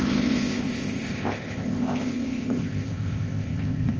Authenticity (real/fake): fake